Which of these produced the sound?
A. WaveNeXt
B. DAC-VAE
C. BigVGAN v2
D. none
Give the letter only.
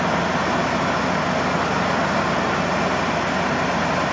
D